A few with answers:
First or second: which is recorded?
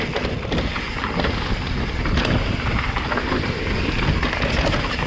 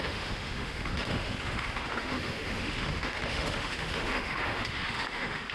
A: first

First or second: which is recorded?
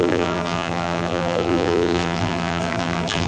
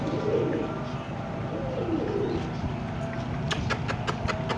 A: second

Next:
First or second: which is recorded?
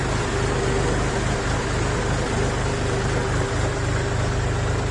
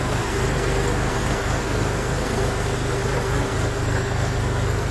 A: first